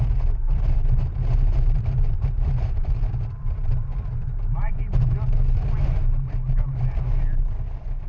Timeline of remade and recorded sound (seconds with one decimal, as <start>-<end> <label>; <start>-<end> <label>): 0.0-0.4 recorded; 0.4-4.7 remade; 4.7-8.1 recorded